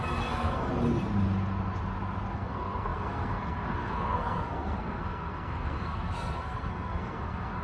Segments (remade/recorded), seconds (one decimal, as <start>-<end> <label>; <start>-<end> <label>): 0.0-0.7 remade; 0.7-2.3 recorded; 2.3-7.6 remade